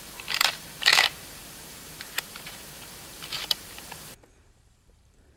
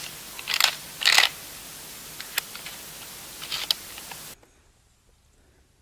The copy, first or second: first